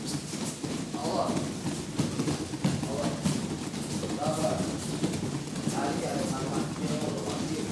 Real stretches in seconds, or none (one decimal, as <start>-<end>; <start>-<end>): 0.0-7.7